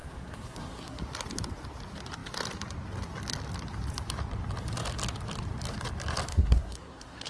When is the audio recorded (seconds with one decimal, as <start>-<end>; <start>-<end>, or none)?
1.0-6.3